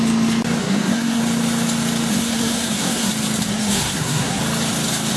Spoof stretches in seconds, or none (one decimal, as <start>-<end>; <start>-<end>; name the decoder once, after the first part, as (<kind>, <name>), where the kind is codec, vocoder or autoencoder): 0.6-1.2 (codec, SNAC); 2.1-3.1; 3.5-4.4